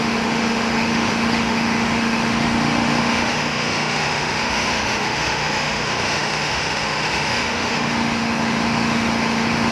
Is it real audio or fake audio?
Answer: fake